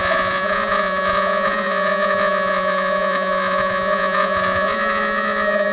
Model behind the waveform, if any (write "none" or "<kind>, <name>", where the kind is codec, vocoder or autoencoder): vocoder, Vocos